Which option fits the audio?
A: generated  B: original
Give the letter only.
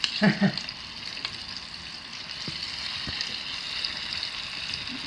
B